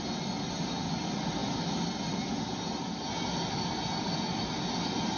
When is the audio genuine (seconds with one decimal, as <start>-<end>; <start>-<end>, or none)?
0.0-5.2